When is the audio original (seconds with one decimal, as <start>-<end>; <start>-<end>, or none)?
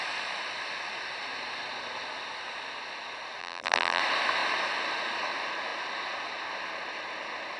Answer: 0.0-3.4; 4.0-7.6